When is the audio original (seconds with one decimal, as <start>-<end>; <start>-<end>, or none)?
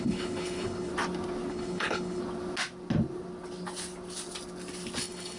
0.9-1.5; 2.2-5.0